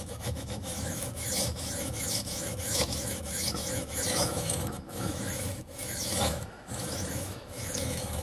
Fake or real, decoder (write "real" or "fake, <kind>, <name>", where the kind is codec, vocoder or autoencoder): fake, autoencoder, DAC-VAE